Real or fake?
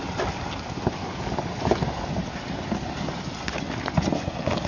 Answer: real